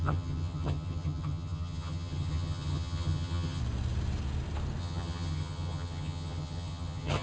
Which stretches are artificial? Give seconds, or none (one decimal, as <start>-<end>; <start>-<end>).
0.0-3.6; 4.8-7.2